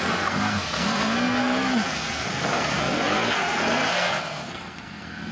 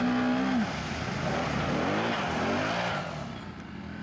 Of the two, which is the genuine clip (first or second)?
second